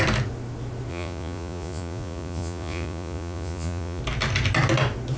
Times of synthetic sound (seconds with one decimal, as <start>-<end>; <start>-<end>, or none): 0.9-4.0